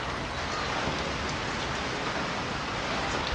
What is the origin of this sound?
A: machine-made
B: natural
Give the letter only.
B